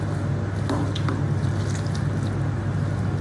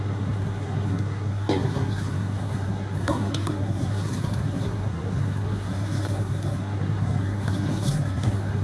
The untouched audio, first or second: first